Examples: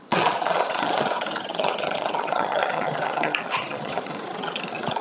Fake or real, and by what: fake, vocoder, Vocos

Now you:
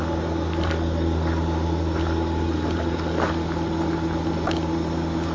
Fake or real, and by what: real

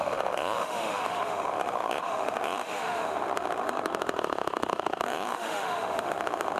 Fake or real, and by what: fake, autoencoder, DAC-VAE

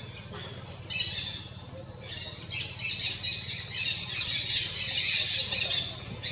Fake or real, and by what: real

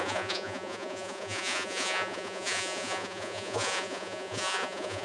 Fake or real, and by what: fake, vocoder, Vocos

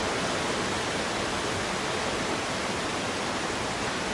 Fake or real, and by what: real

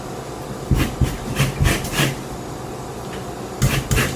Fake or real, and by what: real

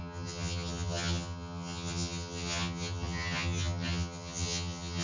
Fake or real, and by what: fake, vocoder, HiFi-GAN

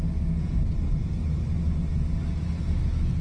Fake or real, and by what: real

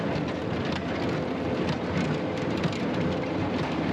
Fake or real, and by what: real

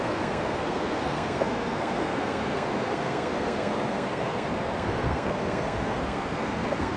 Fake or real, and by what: fake, codec, SNAC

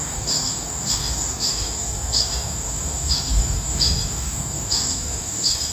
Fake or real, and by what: fake, codec, DAC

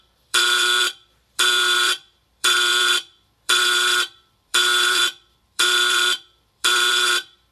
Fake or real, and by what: fake, vocoder, BigVGAN v2